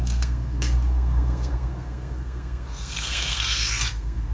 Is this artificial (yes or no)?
yes